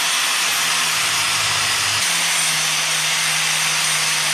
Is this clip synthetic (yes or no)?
no